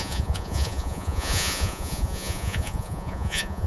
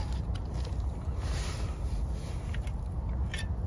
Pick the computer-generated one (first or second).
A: first